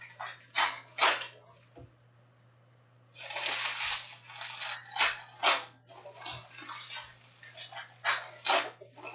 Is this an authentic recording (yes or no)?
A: yes